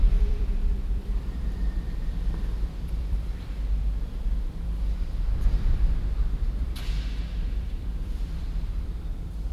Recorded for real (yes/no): no